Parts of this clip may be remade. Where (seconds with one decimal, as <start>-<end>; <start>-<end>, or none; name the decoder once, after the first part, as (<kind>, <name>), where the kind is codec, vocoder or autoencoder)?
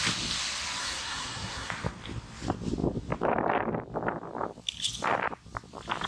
0.8-1.7 (codec, SNAC)